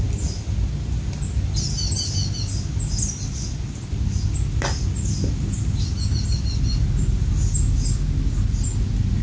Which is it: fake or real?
real